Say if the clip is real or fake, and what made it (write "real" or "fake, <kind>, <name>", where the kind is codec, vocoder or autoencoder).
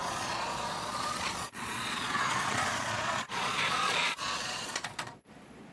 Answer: fake, vocoder, Vocos